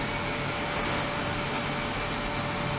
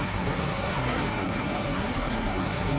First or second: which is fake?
second